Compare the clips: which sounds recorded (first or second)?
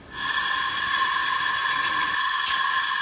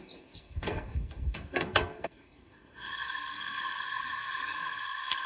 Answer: first